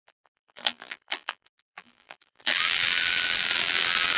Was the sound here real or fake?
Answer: fake